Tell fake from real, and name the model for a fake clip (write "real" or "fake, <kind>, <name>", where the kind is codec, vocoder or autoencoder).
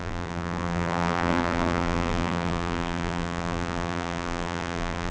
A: fake, vocoder, BigVGAN v2